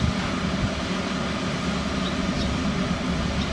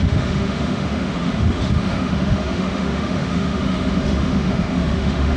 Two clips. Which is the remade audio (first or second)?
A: second